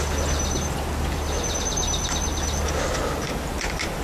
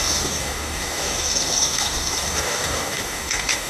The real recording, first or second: first